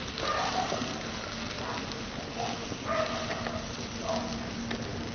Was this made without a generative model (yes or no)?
yes